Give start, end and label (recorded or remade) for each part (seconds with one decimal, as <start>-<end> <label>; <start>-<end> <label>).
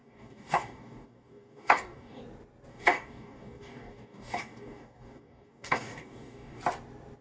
0.0-2.2 remade; 2.2-2.7 recorded; 2.7-6.6 remade; 6.6-7.2 recorded